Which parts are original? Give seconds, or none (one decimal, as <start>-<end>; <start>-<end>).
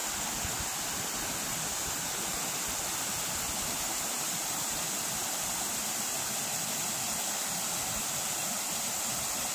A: 0.0-9.5